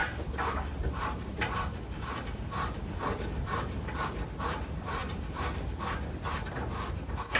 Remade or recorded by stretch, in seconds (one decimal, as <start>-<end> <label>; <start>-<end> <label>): 0.0-3.0 remade; 3.0-7.4 recorded